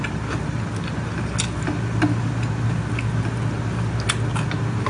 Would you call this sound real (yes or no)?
yes